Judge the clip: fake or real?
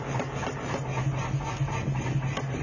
real